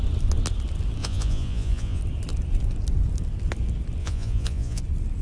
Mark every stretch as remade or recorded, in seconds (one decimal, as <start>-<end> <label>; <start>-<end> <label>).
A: 0.0-1.0 recorded; 1.0-2.0 remade; 2.0-4.0 recorded; 4.0-4.8 remade; 4.8-5.2 recorded